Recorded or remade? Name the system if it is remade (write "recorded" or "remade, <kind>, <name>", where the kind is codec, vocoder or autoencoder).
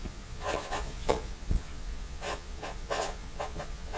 remade, vocoder, Vocos